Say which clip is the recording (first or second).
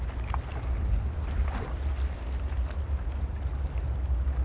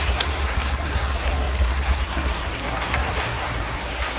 first